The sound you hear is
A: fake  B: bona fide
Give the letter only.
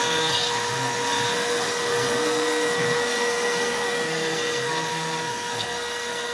A